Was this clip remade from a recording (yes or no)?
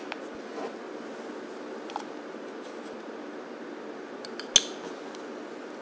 no